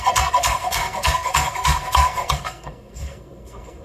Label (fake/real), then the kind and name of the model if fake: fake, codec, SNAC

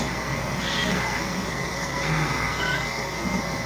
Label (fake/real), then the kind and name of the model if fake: fake, codec, SNAC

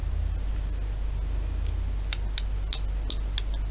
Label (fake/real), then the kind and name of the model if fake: real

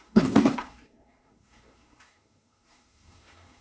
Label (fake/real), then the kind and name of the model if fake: fake, codec, SNAC